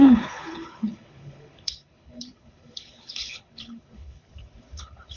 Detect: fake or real fake